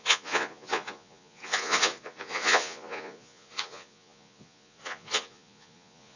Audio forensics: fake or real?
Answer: fake